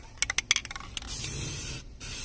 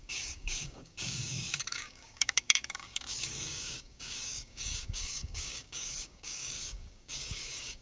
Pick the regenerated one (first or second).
second